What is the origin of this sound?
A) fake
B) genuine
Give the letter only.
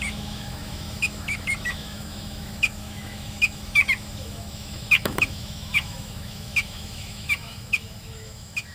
A